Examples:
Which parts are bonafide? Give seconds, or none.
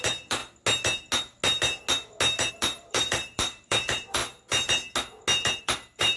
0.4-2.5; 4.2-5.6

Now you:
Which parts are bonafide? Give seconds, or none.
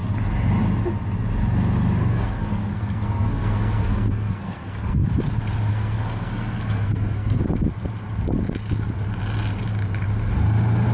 0.0-2.0; 5.0-5.7; 7.4-10.9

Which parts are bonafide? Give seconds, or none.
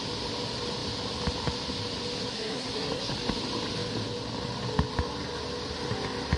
0.0-2.2; 3.1-6.4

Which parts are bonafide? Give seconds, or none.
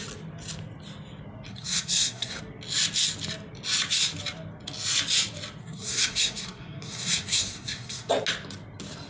0.0-1.5; 2.4-5.6; 8.1-9.1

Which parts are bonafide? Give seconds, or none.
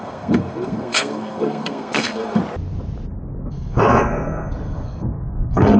2.4-3.5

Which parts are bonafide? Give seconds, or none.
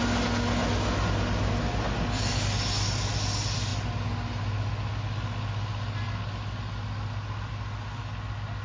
0.0-8.6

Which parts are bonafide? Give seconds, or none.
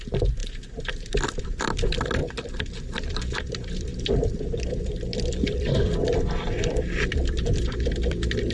2.2-2.7